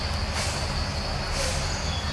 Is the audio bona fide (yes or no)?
yes